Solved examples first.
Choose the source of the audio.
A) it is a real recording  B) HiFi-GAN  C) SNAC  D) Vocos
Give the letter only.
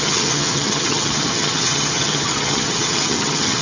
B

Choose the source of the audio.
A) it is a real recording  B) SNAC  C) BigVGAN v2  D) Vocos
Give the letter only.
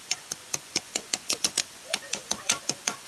D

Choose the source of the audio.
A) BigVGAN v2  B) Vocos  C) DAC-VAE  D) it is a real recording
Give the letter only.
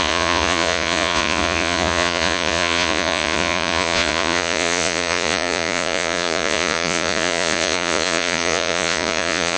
B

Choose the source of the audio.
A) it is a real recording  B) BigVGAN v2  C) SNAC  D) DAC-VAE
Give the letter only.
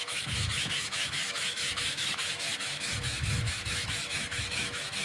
D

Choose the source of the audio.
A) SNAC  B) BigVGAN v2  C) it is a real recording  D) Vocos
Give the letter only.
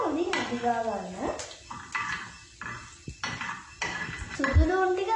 C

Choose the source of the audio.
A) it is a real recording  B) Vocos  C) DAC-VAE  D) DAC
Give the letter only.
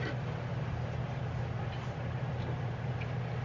A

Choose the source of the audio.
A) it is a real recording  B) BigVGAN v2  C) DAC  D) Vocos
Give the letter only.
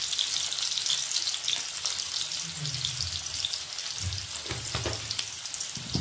A